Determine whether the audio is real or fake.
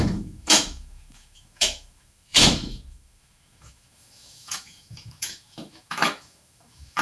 fake